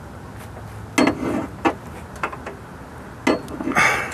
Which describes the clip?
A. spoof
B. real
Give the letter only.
B